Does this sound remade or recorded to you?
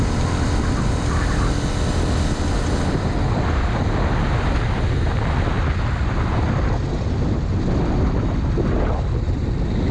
recorded